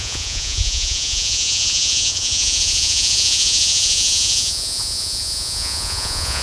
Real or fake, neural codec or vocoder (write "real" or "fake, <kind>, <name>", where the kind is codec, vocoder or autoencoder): fake, vocoder, Vocos